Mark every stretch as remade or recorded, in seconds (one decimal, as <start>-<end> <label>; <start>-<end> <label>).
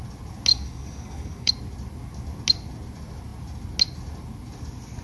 0.0-0.5 recorded; 0.5-1.5 remade; 1.5-5.0 recorded